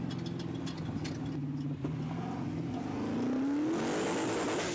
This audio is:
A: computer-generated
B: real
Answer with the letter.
B